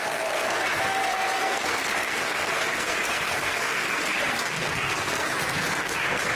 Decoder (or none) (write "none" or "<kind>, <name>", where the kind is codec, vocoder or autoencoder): codec, SNAC